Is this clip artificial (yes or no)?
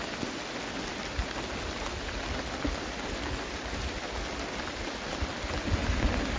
no